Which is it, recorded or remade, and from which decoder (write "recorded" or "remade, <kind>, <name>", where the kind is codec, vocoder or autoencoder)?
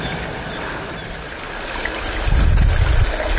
recorded